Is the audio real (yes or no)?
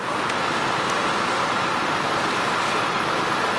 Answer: yes